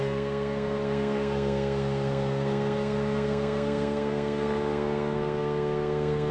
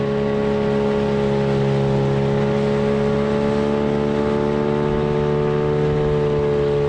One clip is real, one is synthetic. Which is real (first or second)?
second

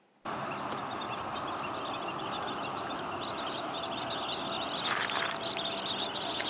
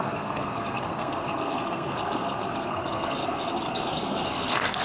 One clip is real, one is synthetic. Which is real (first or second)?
first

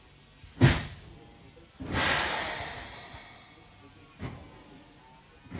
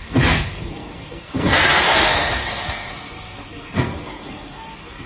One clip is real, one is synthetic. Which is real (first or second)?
first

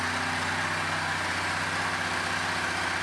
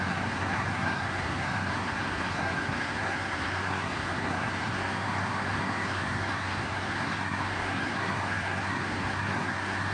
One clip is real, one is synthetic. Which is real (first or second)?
first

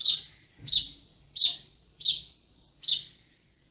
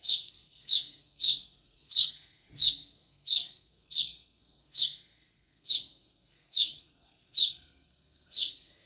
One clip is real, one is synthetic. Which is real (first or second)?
first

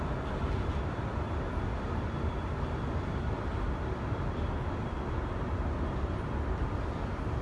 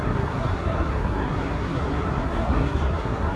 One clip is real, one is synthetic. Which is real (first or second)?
first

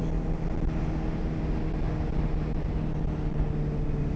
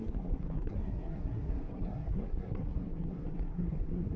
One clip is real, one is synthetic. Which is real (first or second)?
first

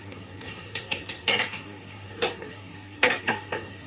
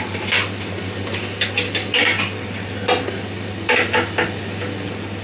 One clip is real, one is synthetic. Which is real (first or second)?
second